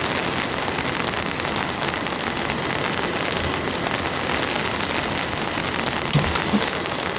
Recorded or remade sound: recorded